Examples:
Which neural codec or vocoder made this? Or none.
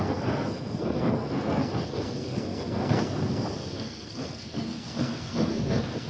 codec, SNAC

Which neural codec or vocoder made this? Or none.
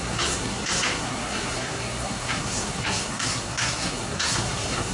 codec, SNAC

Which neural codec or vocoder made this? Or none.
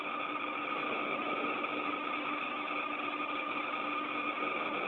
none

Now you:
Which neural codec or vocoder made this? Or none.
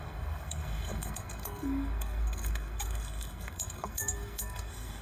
codec, SNAC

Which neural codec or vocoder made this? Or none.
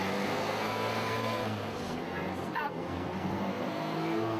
codec, SNAC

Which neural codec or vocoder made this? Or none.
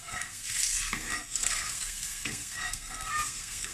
codec, SNAC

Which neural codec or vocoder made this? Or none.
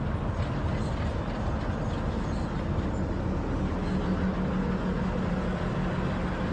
none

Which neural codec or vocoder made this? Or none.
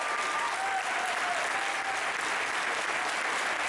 none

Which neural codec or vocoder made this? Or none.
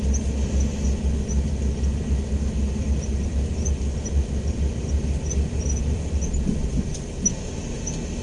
none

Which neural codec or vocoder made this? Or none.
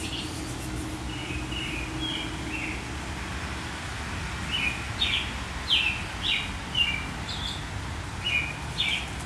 none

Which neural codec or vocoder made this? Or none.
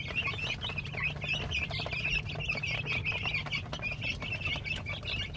none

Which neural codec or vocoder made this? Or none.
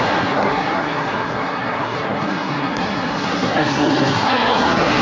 codec, SNAC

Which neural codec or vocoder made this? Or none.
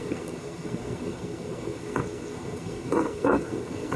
codec, SNAC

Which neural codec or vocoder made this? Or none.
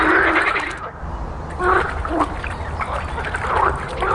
none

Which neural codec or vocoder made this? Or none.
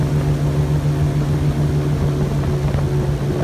none